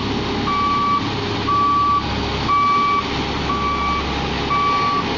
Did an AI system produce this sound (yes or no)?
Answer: no